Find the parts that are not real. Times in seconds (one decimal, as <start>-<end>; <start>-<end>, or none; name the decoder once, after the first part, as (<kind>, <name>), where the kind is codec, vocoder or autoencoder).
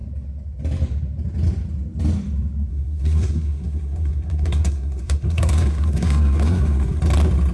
2.7-7.0 (codec, SNAC)